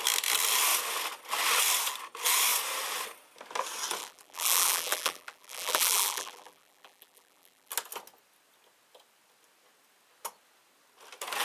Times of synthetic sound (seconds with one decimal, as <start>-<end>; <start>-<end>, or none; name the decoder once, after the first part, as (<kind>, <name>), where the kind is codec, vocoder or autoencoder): 4.0-7.7 (vocoder, BigVGAN v2)